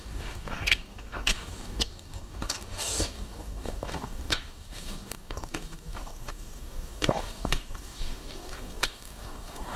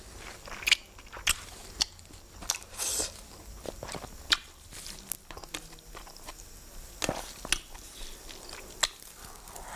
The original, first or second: second